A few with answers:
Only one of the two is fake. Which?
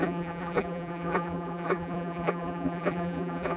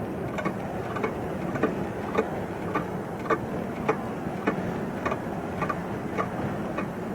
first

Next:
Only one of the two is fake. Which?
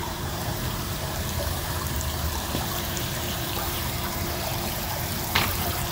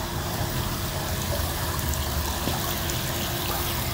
first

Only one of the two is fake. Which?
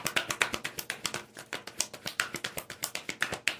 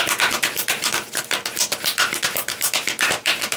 second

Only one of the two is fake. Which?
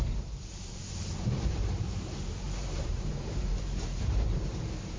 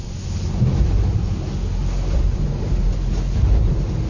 first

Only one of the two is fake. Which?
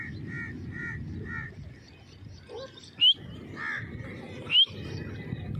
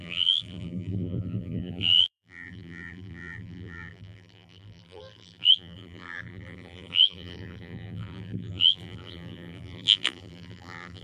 second